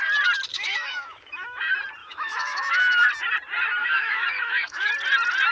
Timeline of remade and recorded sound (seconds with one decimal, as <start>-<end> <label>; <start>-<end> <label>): 0.0-0.5 recorded; 0.5-1.6 remade; 1.6-2.0 recorded; 2.0-3.1 remade; 3.1-3.8 recorded; 3.8-4.9 remade; 4.9-5.5 recorded

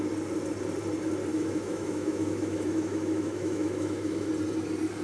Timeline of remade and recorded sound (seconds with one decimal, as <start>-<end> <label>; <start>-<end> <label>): 0.0-1.3 recorded; 1.3-4.3 remade; 4.3-5.0 recorded

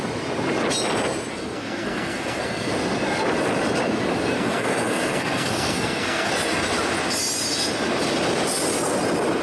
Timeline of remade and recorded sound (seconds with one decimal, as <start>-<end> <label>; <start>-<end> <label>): 0.0-1.3 recorded; 1.3-2.7 remade; 2.7-4.3 recorded; 4.3-6.3 remade; 6.3-9.4 recorded

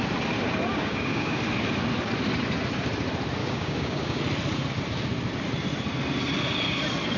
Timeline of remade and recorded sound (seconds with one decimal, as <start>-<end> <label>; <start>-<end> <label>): 0.0-0.7 recorded; 0.7-1.4 remade; 1.4-3.4 recorded; 3.4-4.2 remade; 4.2-7.2 recorded

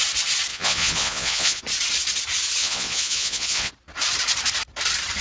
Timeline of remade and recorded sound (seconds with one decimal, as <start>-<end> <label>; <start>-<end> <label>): 0.0-0.5 recorded; 0.5-1.6 remade; 1.6-2.6 recorded; 2.6-3.7 remade; 3.7-5.2 recorded

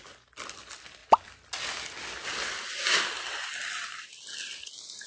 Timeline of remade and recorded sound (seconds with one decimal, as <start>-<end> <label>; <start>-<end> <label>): 0.0-5.1 recorded